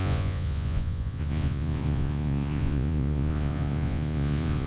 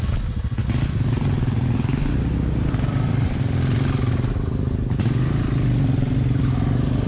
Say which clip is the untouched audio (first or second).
second